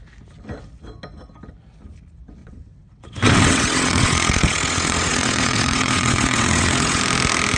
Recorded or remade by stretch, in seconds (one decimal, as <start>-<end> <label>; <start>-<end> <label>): 0.0-2.4 recorded; 2.4-7.0 remade; 7.0-7.6 recorded